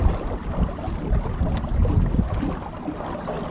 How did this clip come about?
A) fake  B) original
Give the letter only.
B